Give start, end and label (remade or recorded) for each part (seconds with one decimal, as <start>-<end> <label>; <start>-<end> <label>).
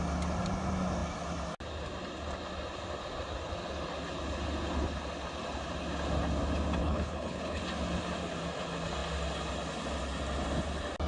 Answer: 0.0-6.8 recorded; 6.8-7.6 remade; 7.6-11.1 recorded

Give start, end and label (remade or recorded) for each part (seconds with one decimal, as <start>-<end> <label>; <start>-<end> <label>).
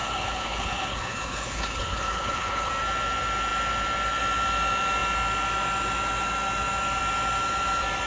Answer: 0.0-2.7 remade; 2.7-8.1 recorded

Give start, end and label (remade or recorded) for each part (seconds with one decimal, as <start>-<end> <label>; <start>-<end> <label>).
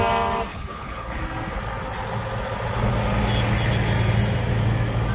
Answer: 0.0-0.5 recorded; 0.5-1.2 remade; 1.2-5.1 recorded